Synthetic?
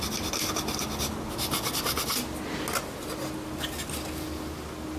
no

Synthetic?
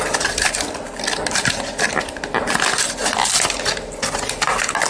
no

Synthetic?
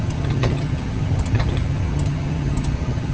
yes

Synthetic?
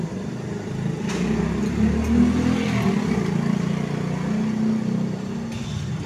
no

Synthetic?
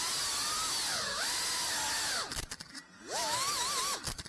no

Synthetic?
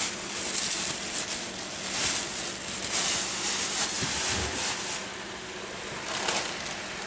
no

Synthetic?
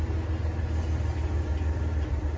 no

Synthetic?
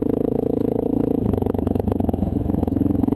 yes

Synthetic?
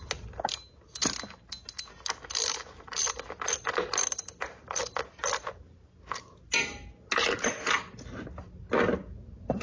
no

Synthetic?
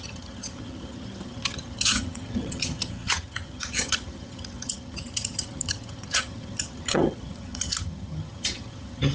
yes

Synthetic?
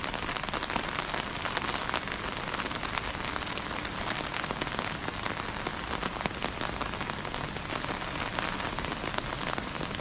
no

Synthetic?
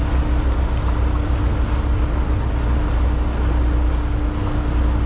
no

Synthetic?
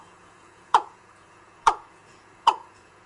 yes